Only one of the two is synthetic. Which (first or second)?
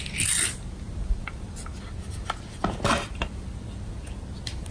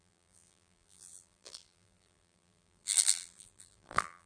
second